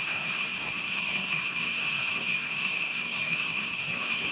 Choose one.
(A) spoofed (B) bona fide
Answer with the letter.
A